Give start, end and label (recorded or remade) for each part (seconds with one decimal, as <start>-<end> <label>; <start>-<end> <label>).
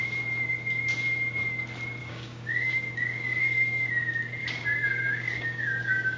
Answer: 0.0-2.0 recorded; 2.0-3.9 remade; 3.9-4.4 recorded; 4.4-6.2 remade